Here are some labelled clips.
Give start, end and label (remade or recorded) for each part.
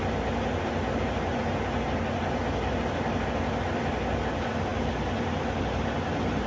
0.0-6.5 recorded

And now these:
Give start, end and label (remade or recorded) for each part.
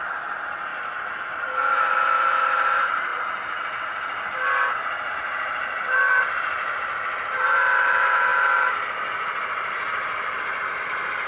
0.0-0.7 remade; 0.7-1.2 recorded; 1.2-3.1 remade; 3.1-5.1 recorded; 5.1-11.3 remade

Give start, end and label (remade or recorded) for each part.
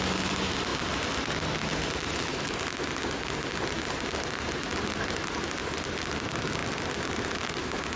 0.0-6.6 recorded; 6.6-7.2 remade; 7.2-8.0 recorded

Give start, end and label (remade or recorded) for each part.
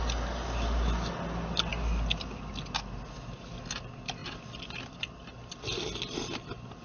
0.0-6.8 recorded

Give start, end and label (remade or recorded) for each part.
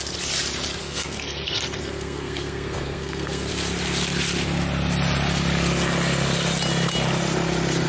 0.0-0.8 recorded; 0.8-3.5 remade; 3.5-7.9 recorded